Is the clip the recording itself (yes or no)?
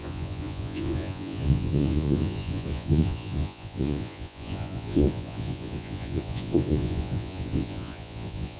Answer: no